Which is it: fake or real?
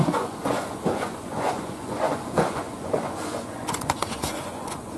fake